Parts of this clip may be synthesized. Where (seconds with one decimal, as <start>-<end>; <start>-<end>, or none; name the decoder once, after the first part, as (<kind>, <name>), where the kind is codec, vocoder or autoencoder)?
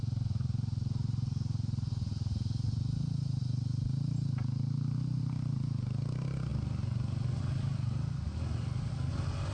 none